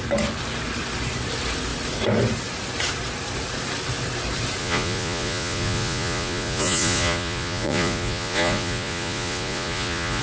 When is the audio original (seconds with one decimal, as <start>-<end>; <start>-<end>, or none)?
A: 0.0-4.6